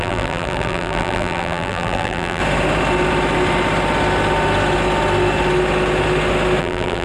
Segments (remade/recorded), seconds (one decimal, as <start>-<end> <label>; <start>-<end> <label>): 0.0-2.4 remade; 2.4-6.6 recorded; 6.6-7.0 remade